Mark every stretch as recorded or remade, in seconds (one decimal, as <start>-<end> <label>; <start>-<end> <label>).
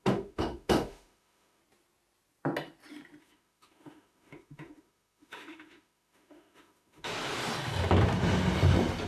0.0-1.6 remade; 1.6-3.2 recorded; 3.2-7.1 remade; 7.1-9.1 recorded